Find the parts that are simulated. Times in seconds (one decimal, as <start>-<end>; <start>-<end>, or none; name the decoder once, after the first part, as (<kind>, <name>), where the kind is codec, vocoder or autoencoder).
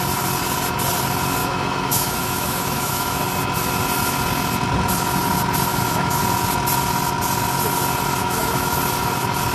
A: 1.4-3.2 (autoencoder, DAC-VAE); 5.7-6.2; 8.2-8.8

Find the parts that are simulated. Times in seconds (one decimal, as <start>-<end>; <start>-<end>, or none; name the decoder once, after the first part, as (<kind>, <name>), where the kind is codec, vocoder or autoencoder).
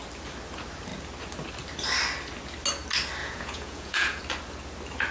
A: 3.2-4.2 (vocoder, Vocos)